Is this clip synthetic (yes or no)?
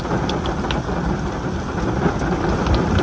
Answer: no